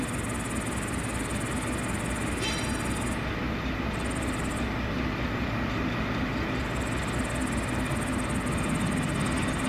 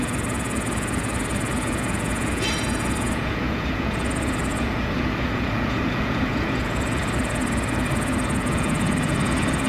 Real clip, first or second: first